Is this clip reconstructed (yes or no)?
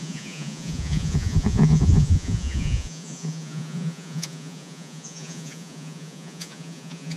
yes